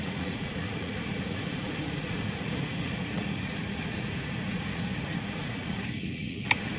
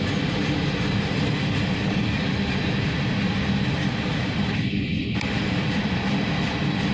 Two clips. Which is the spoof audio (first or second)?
first